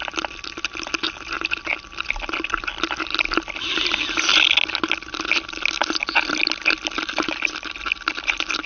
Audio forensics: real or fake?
real